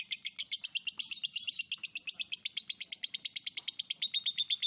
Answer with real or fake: real